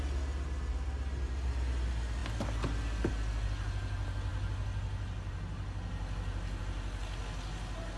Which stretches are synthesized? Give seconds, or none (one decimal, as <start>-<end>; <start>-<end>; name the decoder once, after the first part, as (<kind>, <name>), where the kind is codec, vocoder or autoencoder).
none